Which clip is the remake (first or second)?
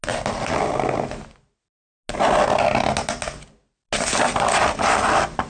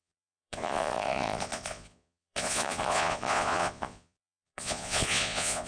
second